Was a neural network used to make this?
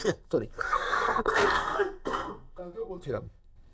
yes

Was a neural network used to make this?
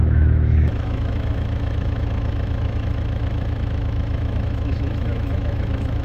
yes